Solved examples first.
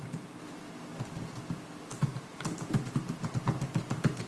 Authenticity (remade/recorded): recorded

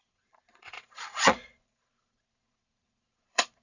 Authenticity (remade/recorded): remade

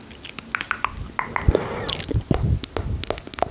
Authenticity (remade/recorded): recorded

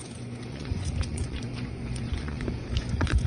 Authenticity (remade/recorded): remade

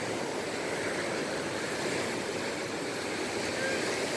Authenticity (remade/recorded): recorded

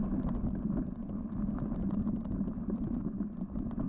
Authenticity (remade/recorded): recorded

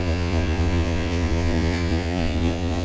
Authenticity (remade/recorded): remade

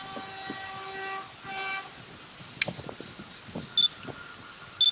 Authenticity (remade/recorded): recorded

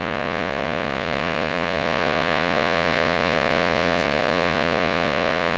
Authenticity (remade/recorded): remade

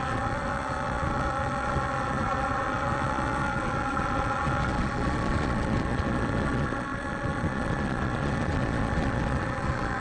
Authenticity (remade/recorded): remade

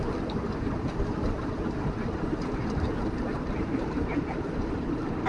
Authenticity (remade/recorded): recorded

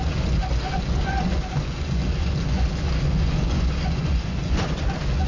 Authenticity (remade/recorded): remade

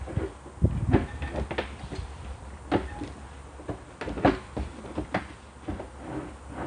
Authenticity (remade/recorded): recorded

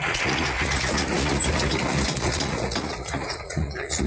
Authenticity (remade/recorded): remade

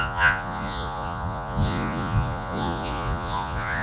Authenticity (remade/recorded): remade